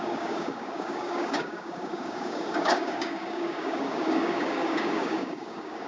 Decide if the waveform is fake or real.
fake